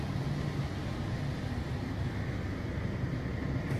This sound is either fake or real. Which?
fake